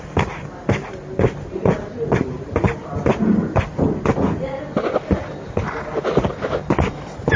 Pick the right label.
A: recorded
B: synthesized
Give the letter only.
A